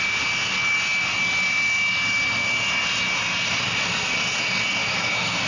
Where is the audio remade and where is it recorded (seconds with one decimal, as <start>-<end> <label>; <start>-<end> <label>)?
0.0-4.8 recorded; 4.8-5.5 remade